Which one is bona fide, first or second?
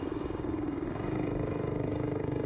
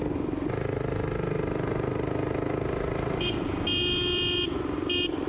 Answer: second